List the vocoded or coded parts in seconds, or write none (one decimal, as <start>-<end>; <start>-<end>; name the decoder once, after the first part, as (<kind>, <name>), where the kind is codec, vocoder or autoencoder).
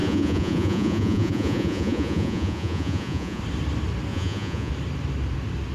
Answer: 0.0-3.4 (vocoder, Vocos); 4.1-4.7